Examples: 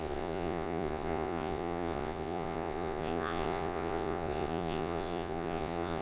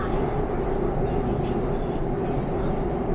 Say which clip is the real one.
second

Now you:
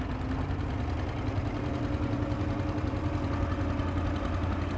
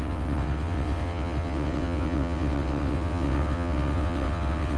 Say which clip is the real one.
first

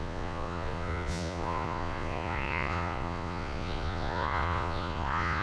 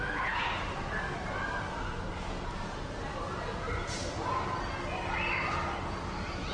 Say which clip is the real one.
second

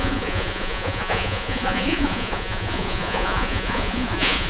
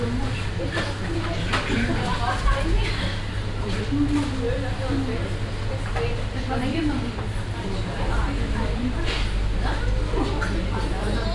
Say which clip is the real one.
second